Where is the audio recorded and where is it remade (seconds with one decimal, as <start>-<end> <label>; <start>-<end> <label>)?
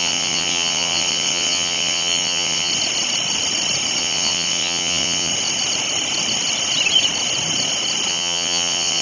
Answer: 0.0-2.7 remade; 2.7-4.0 recorded; 4.0-5.3 remade; 5.3-8.1 recorded; 8.1-9.0 remade